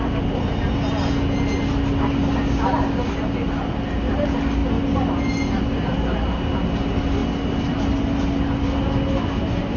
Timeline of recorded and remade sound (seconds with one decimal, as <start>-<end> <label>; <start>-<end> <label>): 0.0-9.8 recorded